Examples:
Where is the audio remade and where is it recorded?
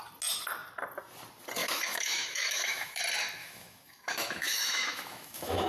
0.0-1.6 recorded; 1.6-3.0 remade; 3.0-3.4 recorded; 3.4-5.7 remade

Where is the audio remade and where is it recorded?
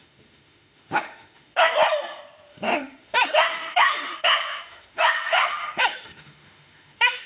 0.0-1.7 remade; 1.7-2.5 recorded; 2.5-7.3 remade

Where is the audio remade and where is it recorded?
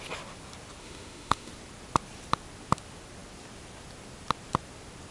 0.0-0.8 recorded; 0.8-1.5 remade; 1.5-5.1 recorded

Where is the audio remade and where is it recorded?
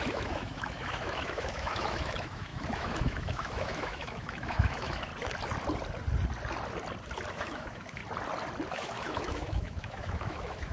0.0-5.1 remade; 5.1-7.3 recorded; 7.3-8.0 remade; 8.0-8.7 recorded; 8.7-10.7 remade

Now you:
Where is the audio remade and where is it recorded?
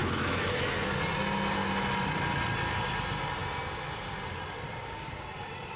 0.0-0.6 remade; 0.6-5.8 recorded